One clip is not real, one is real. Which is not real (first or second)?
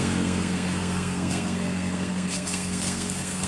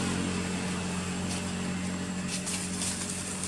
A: first